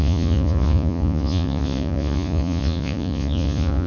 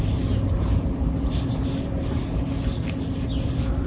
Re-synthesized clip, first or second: first